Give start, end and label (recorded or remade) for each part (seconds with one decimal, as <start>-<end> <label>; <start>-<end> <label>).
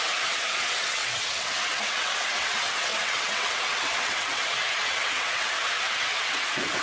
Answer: 0.0-6.8 remade